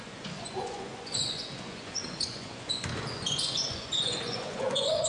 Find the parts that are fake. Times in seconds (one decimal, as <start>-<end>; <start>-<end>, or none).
0.0-5.1